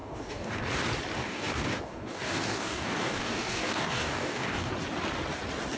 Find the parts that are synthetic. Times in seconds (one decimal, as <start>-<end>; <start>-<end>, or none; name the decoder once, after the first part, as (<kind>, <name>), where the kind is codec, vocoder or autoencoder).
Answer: 0.0-0.6 (codec, DAC); 1.2-4.7